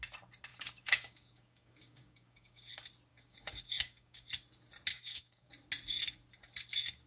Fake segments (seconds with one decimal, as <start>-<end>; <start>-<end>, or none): 0.5-2.7; 3.1-4.3; 4.9-5.5